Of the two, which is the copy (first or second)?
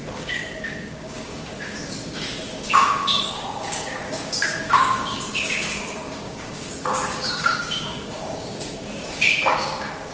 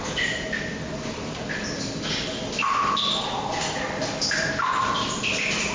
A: first